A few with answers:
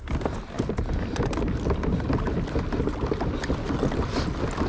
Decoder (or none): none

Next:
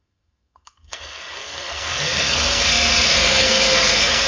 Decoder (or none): codec, SNAC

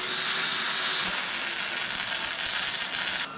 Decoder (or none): none